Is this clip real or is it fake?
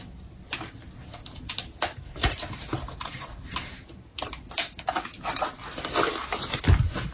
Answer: real